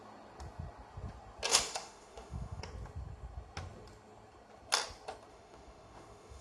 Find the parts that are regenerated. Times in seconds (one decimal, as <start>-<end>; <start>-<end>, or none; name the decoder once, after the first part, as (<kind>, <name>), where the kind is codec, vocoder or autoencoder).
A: 1.5-2.6 (autoencoder, DAC-VAE); 5.3-6.4